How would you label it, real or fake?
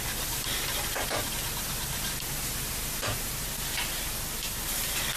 real